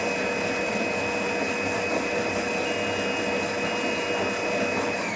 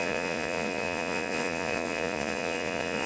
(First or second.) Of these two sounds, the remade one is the second